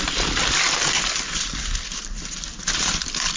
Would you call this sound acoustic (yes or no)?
yes